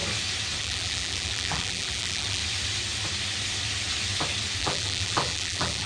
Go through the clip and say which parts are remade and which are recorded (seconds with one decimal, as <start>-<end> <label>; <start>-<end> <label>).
0.0-0.6 recorded; 0.6-2.4 remade; 2.4-4.6 recorded; 4.6-5.9 remade